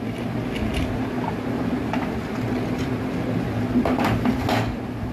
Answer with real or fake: real